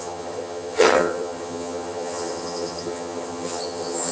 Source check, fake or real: fake